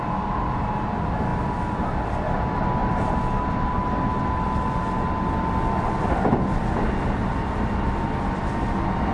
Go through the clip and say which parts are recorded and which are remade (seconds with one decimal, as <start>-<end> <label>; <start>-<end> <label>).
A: 0.0-9.1 recorded